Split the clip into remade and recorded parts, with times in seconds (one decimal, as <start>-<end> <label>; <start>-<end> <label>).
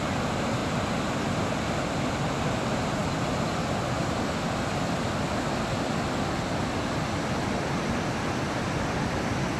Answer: 0.0-9.6 recorded